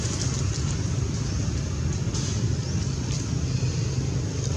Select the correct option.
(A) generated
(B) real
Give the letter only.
B